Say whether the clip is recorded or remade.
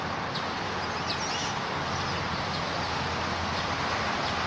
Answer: recorded